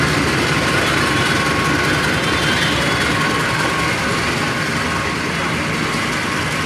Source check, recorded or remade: recorded